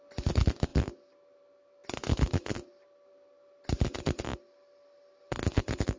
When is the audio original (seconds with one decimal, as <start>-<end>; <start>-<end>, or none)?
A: 0.0-6.0